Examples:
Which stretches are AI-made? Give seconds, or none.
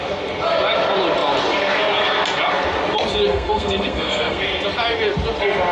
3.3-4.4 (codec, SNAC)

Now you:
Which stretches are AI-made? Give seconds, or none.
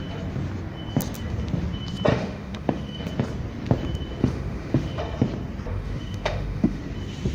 2.1-3.0 (autoencoder, DAC-VAE); 4.2-5.0; 5.7-6.8